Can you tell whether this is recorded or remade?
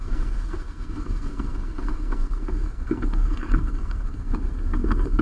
remade